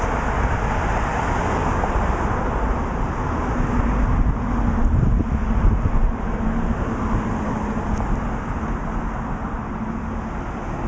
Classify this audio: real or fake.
real